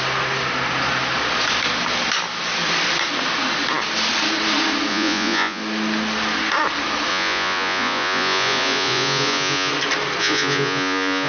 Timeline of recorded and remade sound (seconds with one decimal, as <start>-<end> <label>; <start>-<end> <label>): 0.0-4.9 recorded; 4.9-5.6 remade; 5.6-7.1 recorded; 7.1-9.7 remade; 9.7-10.2 recorded; 10.2-11.3 remade

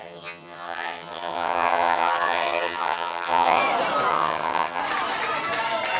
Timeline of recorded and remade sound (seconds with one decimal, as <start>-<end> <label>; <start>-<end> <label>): 0.0-3.6 remade; 3.6-4.1 recorded; 4.1-4.8 remade; 4.8-6.0 recorded

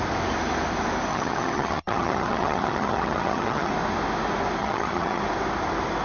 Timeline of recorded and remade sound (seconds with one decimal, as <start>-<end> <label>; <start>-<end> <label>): 0.0-1.1 recorded; 1.1-3.7 remade; 3.7-4.6 recorded; 4.6-5.2 remade; 5.2-6.0 recorded

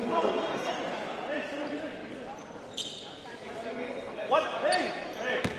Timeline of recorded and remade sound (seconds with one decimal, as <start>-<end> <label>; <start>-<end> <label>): 0.0-0.7 remade; 0.7-3.7 recorded; 3.7-4.3 remade; 4.3-5.6 recorded